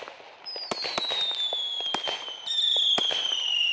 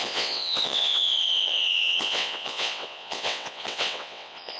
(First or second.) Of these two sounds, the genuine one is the first